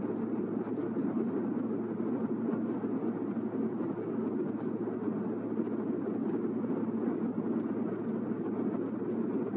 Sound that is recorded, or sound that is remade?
recorded